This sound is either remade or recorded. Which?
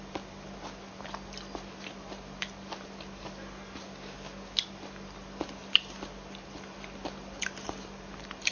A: recorded